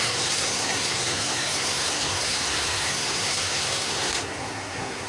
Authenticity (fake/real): fake